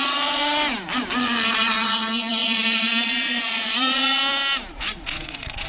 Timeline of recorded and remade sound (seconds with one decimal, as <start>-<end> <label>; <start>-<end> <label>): 0.0-0.4 remade; 0.4-1.5 recorded; 1.5-4.2 remade; 4.2-4.7 recorded; 4.7-5.7 remade